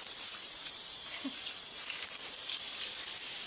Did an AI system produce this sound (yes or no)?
yes